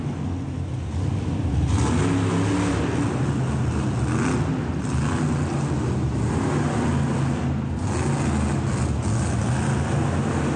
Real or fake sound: real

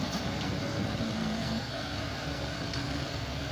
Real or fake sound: fake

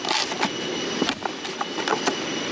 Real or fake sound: real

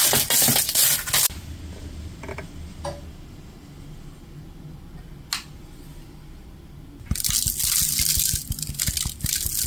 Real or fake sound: real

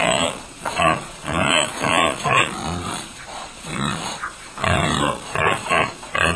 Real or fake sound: fake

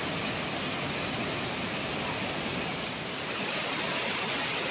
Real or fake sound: real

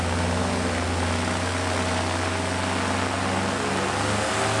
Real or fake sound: real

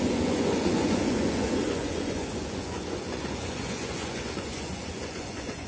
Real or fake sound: fake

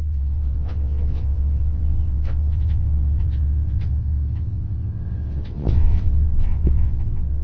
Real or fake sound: fake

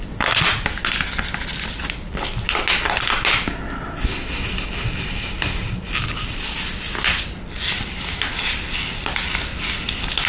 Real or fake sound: real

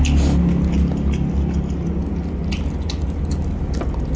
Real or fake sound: real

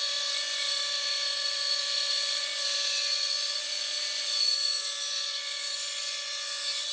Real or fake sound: fake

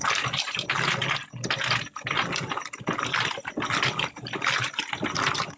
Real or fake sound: real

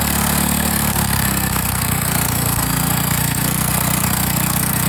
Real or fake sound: fake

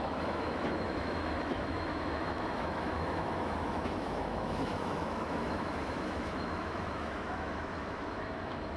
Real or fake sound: fake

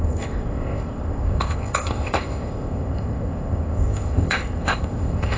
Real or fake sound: fake